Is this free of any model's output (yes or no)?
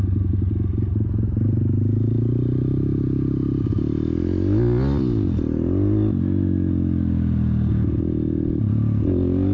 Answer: yes